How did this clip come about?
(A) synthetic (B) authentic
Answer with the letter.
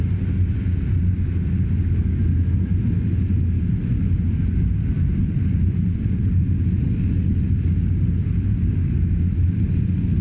B